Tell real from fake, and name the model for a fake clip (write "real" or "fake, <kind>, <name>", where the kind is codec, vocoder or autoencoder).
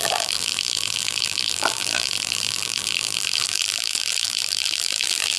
fake, vocoder, BigVGAN v2